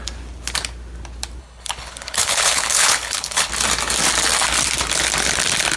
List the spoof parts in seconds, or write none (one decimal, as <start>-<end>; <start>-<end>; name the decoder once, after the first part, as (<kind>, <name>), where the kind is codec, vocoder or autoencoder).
1.4-3.5 (codec, HILCodec)